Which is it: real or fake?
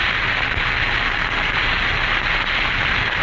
real